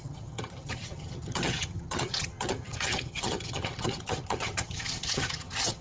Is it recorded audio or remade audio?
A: remade